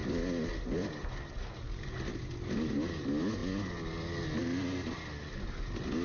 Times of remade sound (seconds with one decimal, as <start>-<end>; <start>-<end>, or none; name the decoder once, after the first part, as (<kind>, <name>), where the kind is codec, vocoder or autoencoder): none